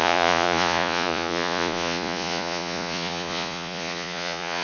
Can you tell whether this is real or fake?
fake